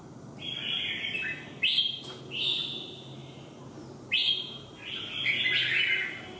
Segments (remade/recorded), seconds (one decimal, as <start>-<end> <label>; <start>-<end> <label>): 0.0-6.4 recorded